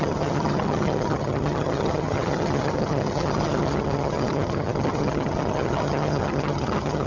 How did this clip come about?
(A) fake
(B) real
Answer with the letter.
A